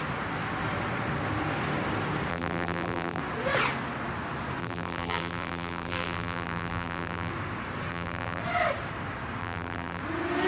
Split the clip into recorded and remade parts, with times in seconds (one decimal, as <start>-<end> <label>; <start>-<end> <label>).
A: 0.0-2.3 recorded; 2.3-3.2 remade; 3.2-4.6 recorded; 4.6-7.3 remade; 7.3-7.9 recorded; 7.9-8.4 remade; 8.4-9.4 recorded; 9.4-10.0 remade; 10.0-10.5 recorded